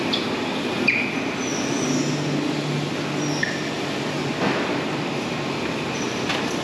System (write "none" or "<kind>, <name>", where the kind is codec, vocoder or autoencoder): none